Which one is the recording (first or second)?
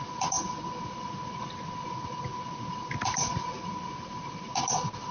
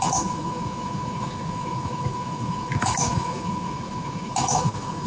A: first